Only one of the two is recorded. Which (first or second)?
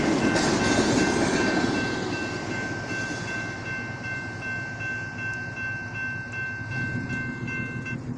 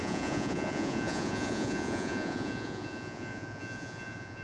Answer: first